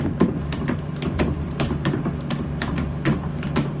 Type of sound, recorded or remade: remade